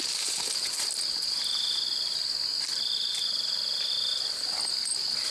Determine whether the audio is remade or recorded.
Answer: recorded